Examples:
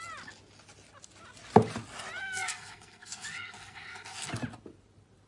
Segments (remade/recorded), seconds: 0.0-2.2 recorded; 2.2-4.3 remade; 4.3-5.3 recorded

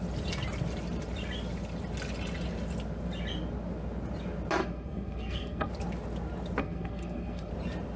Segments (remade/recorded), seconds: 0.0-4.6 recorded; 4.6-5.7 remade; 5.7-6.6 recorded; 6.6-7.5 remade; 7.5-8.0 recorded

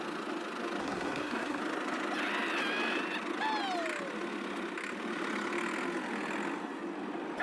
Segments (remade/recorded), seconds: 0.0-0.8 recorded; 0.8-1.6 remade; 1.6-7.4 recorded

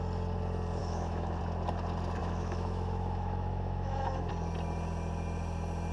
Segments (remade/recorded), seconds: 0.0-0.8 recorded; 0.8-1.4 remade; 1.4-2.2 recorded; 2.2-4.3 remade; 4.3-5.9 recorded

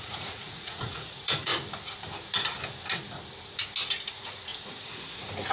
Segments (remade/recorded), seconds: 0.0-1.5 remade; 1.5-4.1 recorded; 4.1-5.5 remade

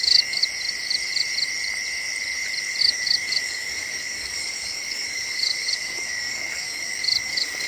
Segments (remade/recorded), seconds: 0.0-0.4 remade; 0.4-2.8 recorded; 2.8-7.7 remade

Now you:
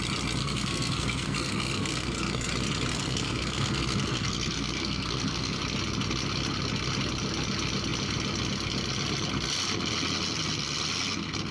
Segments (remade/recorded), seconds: 0.0-0.4 recorded; 0.4-2.5 remade; 2.5-2.9 recorded; 2.9-5.6 remade; 5.6-11.5 recorded